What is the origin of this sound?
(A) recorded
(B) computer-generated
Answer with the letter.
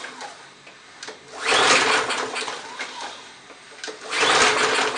A